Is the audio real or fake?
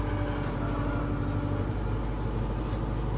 real